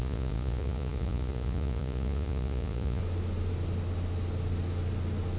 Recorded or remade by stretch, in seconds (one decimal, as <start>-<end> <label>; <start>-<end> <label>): 0.0-3.0 remade; 3.0-5.4 recorded